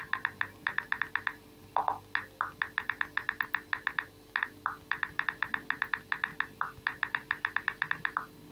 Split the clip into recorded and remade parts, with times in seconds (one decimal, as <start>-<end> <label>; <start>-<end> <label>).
0.0-8.5 recorded